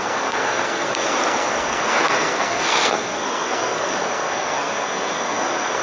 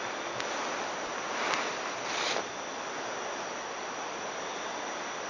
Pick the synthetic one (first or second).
first